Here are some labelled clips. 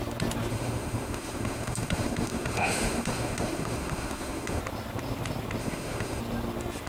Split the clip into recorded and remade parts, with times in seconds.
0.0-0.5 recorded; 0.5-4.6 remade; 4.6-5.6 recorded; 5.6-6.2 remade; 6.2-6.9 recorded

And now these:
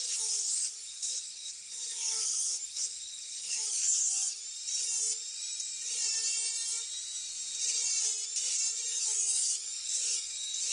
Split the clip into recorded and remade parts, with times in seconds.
0.0-4.4 remade; 4.4-8.9 recorded; 8.9-10.7 remade

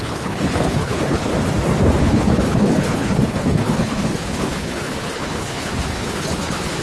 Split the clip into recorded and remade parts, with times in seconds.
0.0-1.3 remade; 1.3-2.0 recorded; 2.0-6.8 remade

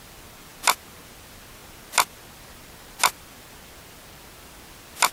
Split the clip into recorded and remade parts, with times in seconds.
0.0-5.1 recorded

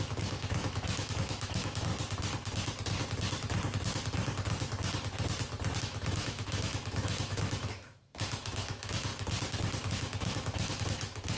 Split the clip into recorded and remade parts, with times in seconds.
0.0-1.9 remade; 1.9-5.8 recorded; 5.8-9.1 remade; 9.1-9.9 recorded; 9.9-11.4 remade

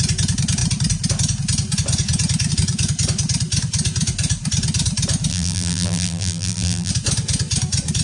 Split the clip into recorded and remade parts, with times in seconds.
0.0-5.3 recorded; 5.3-6.9 remade; 6.9-8.0 recorded